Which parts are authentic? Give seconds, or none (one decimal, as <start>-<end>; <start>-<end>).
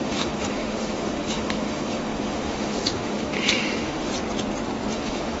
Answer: 4.1-4.9